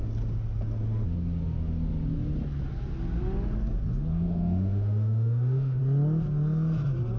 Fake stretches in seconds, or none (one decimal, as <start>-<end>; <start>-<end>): 4.1-5.8